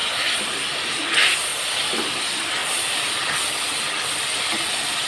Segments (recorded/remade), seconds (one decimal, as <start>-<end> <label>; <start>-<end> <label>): 0.0-2.6 recorded; 2.6-3.3 remade; 3.3-5.1 recorded